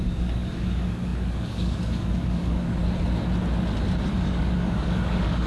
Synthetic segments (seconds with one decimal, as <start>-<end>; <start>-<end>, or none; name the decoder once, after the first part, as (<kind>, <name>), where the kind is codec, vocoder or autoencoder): 0.0-2.8 (codec, DAC); 4.1-5.5